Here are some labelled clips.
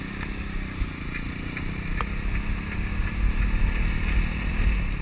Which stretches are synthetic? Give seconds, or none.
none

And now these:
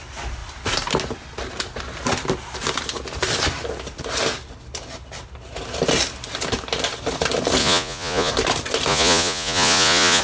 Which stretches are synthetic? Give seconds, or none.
7.6-8.3 (vocoder, Vocos); 8.9-10.2